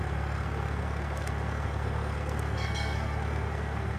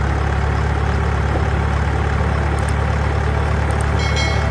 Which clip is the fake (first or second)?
first